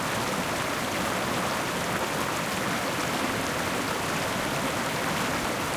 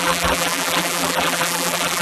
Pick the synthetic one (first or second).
second